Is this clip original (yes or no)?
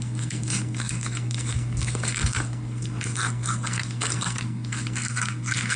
no